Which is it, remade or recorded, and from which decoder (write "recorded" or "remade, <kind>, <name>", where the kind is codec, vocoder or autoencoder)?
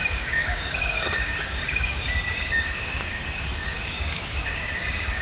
remade, codec, DAC